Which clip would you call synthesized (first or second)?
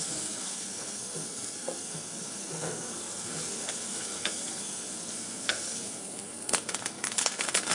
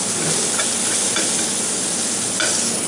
first